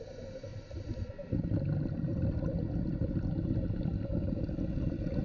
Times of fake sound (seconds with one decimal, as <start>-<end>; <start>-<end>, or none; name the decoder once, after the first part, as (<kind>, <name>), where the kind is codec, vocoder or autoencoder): 0.5-1.1 (vocoder, BigVGAN v2); 2.1-5.2